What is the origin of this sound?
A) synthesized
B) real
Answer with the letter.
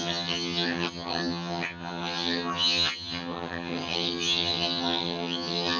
A